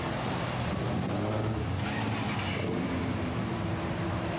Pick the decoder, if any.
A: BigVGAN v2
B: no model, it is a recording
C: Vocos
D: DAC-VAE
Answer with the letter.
B